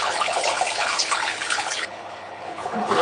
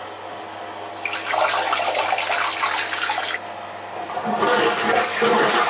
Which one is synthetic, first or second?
first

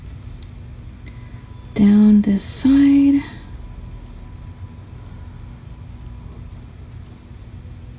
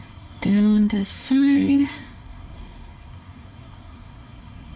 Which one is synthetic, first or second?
second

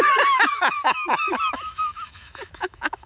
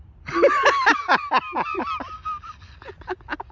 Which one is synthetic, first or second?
first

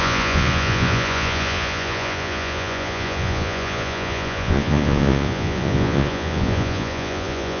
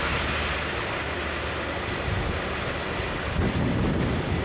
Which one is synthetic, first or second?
first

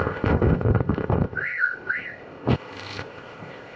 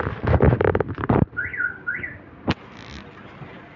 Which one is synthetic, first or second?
first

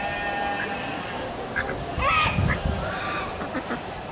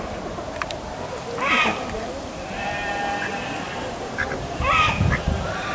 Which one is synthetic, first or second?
second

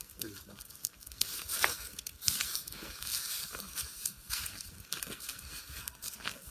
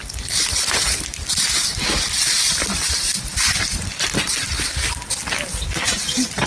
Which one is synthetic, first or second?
first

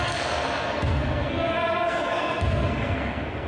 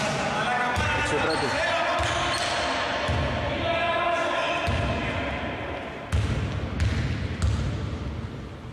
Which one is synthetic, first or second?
first